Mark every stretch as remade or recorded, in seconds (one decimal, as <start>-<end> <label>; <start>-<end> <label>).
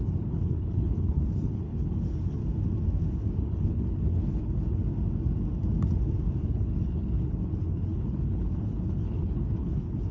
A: 0.0-2.4 remade; 2.4-3.4 recorded; 3.4-4.9 remade; 4.9-6.4 recorded; 6.4-10.1 remade